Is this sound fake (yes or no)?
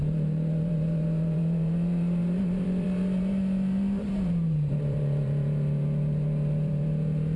yes